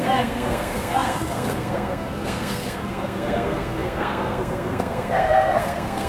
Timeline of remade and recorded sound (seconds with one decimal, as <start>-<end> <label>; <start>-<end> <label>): 0.0-6.1 remade